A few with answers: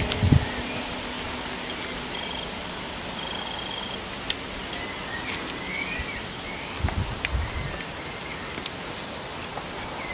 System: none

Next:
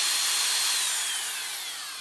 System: none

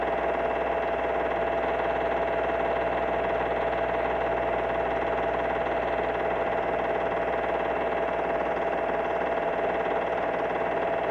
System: none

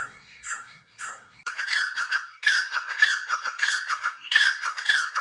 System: codec, SNAC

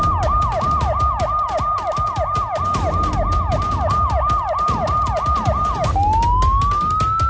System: none